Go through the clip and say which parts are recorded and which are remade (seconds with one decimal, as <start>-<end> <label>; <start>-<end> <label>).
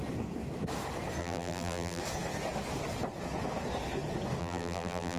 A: 0.0-1.2 recorded; 1.2-2.0 remade; 2.0-4.4 recorded; 4.4-5.2 remade